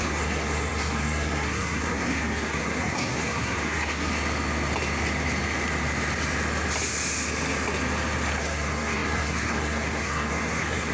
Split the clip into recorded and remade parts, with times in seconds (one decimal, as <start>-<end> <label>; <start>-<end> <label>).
0.0-4.1 remade; 4.1-8.4 recorded; 8.4-10.9 remade